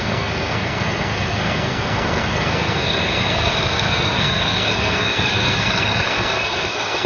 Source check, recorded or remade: remade